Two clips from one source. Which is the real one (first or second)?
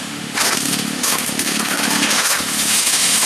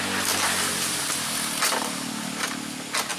second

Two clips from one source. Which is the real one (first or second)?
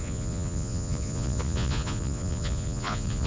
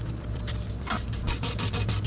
second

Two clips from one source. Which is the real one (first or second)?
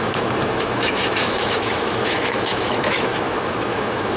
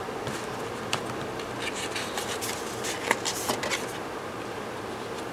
second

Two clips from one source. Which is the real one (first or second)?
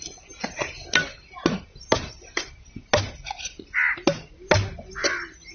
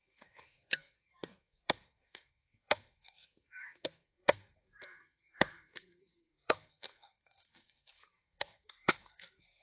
first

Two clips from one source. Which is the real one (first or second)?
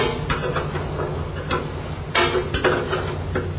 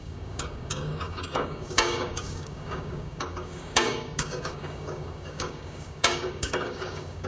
first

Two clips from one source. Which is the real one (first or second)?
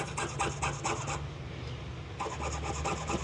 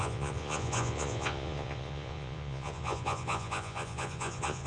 first